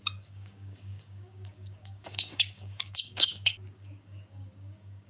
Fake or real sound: fake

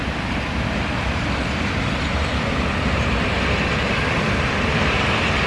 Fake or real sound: real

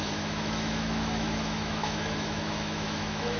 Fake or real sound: fake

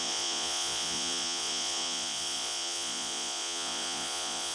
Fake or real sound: fake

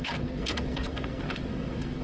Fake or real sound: fake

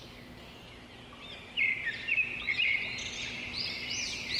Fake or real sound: fake